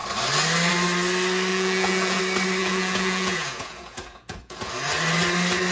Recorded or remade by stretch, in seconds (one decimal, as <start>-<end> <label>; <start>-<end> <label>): 0.0-1.5 recorded; 1.5-2.2 remade; 2.2-2.6 recorded; 2.6-4.7 remade; 4.7-5.7 recorded